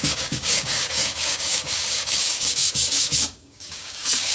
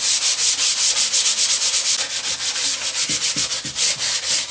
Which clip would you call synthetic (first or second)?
first